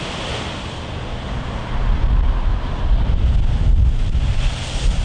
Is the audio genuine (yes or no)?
yes